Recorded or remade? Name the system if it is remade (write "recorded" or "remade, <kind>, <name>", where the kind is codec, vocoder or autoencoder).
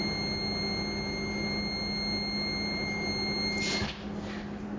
recorded